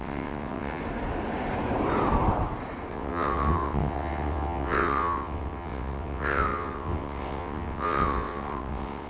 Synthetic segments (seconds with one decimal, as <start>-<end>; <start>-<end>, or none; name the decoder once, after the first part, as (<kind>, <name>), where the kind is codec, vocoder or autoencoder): 0.0-0.8 (vocoder, WaveNeXt); 2.9-9.1